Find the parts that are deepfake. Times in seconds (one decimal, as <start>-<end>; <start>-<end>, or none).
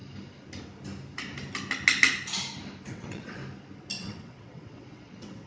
2.9-3.4; 4.0-5.5